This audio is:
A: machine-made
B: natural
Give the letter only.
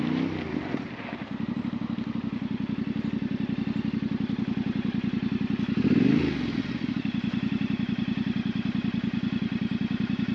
B